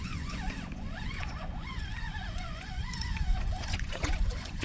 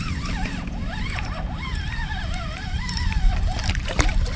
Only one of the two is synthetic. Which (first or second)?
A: first